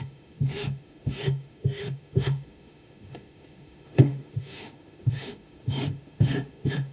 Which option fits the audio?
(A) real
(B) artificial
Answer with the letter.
B